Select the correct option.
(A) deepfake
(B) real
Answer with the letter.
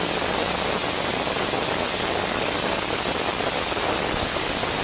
B